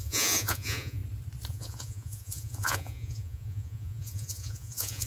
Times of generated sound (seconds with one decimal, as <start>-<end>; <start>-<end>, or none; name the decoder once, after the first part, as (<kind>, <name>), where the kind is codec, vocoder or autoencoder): 0.0-1.0 (vocoder, Vocos); 1.5-5.1